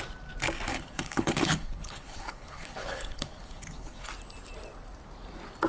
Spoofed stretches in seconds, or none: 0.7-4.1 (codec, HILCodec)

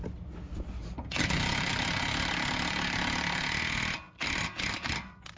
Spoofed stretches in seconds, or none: none